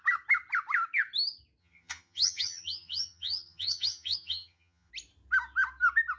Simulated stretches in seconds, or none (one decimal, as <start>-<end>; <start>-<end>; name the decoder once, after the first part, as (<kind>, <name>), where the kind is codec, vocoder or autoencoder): 1.6-4.9 (vocoder, HiFi-GAN)